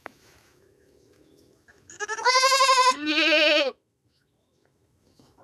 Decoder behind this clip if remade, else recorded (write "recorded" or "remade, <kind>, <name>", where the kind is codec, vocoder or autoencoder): remade, autoencoder, DAC-VAE